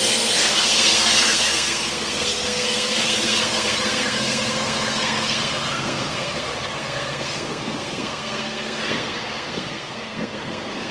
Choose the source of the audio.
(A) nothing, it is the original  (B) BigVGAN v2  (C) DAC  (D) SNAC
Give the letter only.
D